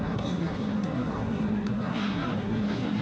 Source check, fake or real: fake